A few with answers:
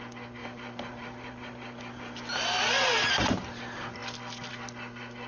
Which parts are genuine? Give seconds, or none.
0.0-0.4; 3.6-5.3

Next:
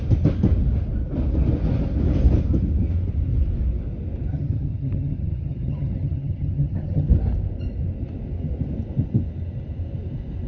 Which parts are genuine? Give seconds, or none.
0.0-4.3; 7.1-10.5

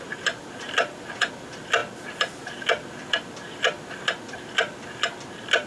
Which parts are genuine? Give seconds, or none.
0.0-5.7

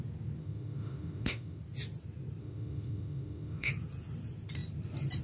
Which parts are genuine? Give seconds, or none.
0.0-0.4; 1.6-2.4; 3.7-5.2